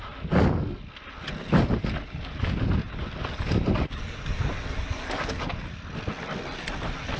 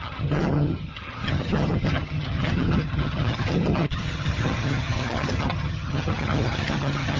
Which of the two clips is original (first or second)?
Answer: first